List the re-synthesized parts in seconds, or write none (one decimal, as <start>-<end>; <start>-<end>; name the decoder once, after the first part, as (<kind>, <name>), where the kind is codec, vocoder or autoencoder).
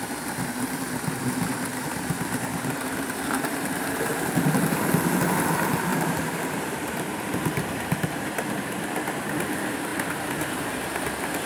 1.7-4.3 (vocoder, BigVGAN v2); 5.9-8.4; 9.9-11.1